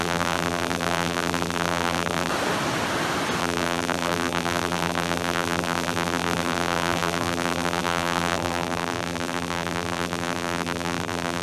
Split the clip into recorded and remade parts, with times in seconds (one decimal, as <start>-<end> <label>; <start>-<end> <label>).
0.0-2.3 remade; 2.3-3.4 recorded; 3.4-11.4 remade